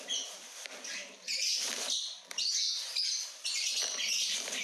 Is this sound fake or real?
fake